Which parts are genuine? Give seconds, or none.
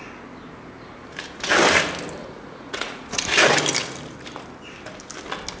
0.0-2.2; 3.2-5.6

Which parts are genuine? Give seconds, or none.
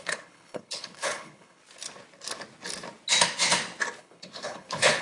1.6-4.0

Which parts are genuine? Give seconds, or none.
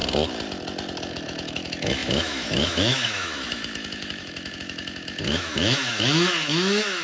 0.0-1.1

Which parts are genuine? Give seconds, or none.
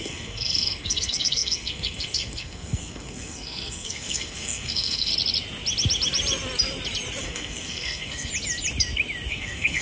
5.1-7.2; 8.3-9.3